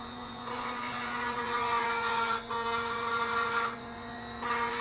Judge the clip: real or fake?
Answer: fake